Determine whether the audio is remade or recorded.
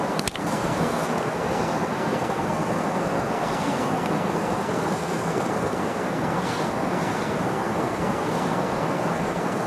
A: remade